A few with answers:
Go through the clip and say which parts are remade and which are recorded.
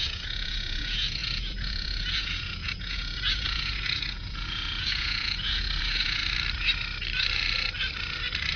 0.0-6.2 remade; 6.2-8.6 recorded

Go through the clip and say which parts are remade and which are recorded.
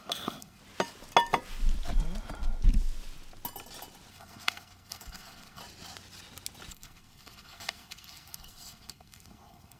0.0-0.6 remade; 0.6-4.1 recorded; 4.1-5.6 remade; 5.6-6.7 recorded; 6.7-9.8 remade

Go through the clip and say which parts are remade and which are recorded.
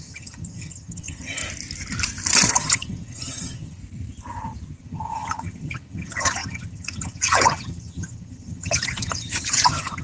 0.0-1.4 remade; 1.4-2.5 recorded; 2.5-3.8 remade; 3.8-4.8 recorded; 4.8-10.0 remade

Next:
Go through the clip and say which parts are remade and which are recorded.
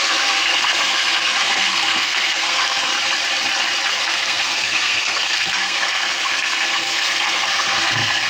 0.0-2.9 remade; 2.9-3.9 recorded; 3.9-8.3 remade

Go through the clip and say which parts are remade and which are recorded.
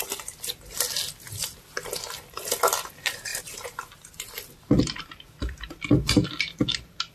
0.0-7.1 recorded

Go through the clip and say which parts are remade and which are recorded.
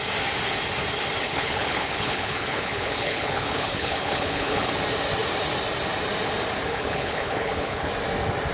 0.0-1.2 recorded; 1.2-4.7 remade; 4.7-6.7 recorded; 6.7-7.9 remade; 7.9-8.5 recorded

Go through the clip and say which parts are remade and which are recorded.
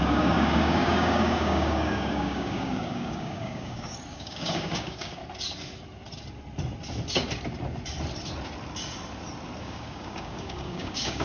0.0-5.2 remade; 5.2-9.6 recorded; 9.6-11.2 remade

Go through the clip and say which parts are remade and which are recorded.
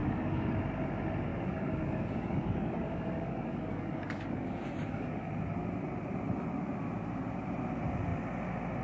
0.0-0.6 remade; 0.6-1.3 recorded; 1.3-5.3 remade; 5.3-8.8 recorded